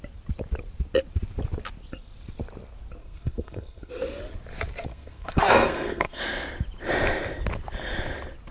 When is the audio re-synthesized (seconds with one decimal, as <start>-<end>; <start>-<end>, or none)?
3.0-3.9; 4.9-6.2